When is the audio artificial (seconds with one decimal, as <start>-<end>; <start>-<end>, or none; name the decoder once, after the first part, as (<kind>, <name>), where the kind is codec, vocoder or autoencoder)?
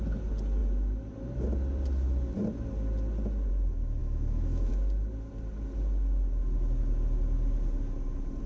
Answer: 4.0-4.7 (autoencoder, DAC-VAE)